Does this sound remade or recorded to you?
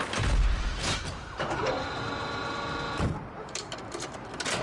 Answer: remade